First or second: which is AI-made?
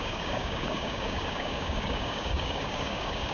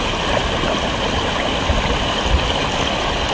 first